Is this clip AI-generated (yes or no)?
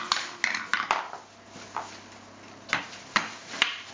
no